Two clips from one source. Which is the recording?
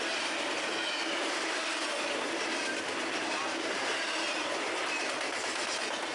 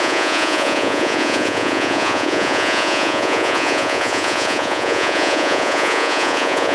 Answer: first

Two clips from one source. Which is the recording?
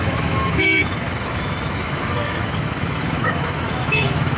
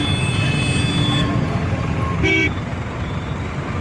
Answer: second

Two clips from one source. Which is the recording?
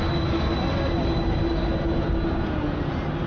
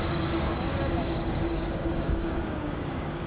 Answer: first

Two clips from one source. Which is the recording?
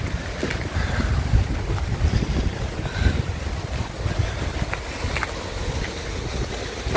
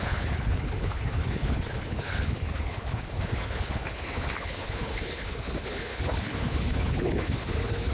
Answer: first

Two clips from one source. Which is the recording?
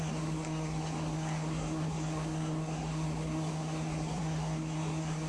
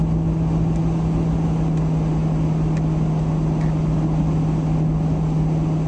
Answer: second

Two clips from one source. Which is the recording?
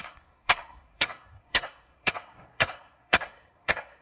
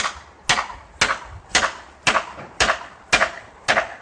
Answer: second